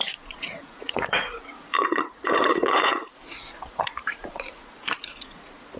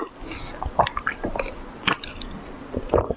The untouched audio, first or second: second